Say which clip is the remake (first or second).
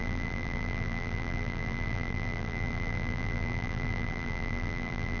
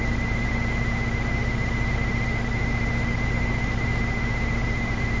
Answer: first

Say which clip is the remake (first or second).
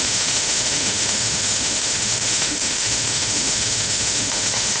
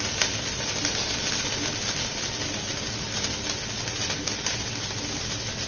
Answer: first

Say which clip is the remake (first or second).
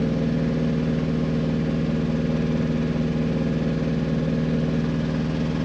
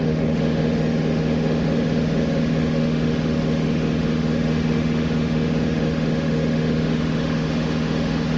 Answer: second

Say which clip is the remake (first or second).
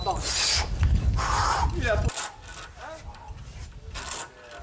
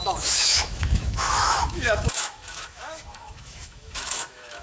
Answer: second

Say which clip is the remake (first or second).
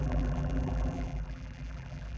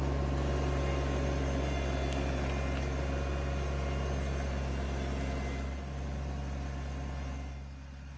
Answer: first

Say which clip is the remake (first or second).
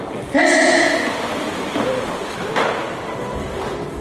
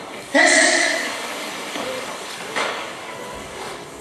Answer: second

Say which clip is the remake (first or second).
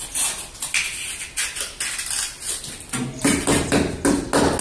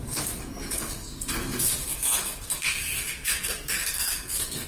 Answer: second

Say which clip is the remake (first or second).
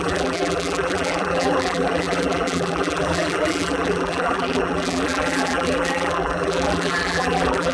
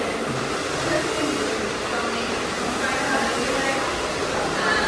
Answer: first